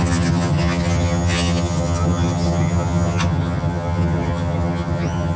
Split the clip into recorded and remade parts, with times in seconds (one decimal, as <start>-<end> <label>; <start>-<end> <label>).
0.0-5.4 remade